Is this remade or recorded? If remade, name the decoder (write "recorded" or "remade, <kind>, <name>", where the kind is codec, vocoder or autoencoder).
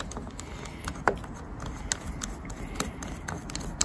recorded